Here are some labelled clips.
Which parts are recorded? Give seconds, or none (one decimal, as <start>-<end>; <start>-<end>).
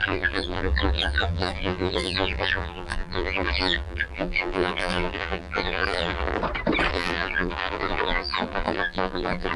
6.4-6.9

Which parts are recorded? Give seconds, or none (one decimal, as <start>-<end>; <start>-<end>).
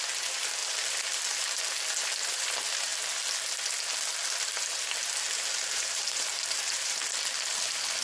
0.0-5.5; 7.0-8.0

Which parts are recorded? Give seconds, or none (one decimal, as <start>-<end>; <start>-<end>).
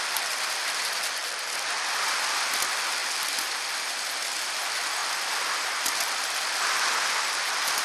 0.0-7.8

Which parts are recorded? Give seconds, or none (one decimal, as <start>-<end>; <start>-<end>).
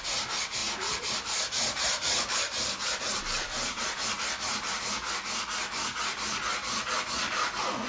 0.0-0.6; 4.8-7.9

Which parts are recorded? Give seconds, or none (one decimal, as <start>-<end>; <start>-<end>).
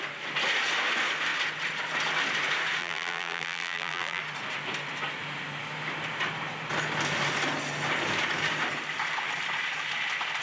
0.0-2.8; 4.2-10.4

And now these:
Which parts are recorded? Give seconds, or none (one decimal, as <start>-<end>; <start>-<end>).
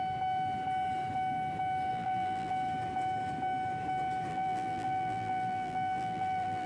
0.0-1.9; 2.5-4.3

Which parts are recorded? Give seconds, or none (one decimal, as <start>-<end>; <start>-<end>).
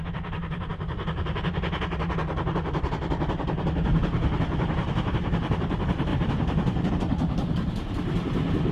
0.0-6.1; 6.9-8.7